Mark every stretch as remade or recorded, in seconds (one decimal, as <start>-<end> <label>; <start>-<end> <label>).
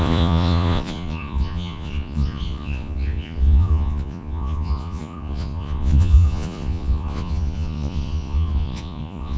0.0-9.4 remade